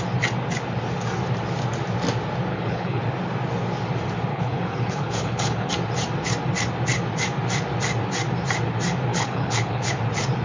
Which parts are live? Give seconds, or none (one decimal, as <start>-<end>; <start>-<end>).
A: 0.0-2.5; 3.0-4.3; 5.7-9.1; 9.9-10.4